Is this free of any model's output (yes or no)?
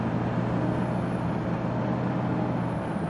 yes